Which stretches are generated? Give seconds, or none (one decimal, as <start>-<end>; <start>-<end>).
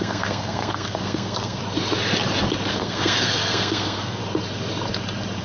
0.0-1.6; 2.7-4.2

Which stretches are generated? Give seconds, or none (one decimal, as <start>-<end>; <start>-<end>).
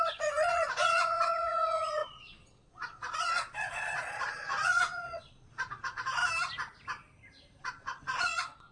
0.0-6.2; 7.6-8.7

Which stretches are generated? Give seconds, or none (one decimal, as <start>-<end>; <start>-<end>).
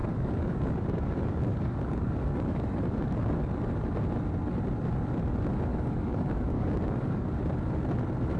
0.0-3.5; 5.7-7.4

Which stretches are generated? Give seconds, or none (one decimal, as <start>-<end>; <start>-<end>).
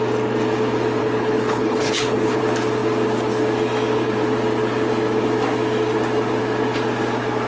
1.0-2.4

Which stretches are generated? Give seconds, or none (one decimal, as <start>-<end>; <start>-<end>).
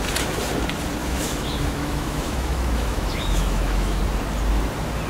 1.0-4.0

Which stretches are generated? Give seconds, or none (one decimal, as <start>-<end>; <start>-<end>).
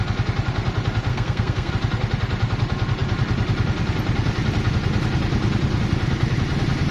1.1-1.7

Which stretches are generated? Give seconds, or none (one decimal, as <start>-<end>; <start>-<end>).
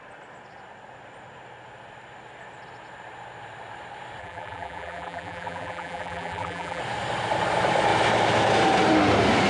4.2-6.8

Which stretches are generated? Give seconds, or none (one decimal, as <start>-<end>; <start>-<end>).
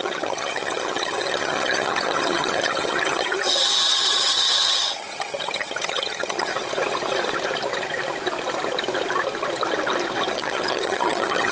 0.0-6.5; 10.3-11.5